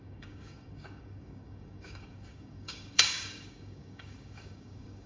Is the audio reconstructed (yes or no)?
yes